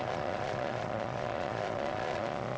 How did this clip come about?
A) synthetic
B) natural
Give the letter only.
A